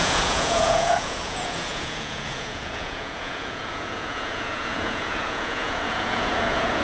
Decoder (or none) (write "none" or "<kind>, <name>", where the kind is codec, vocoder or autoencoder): vocoder, Vocos